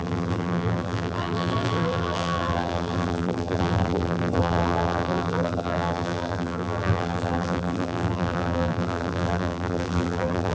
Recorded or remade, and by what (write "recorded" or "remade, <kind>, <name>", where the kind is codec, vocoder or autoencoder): remade, vocoder, BigVGAN v2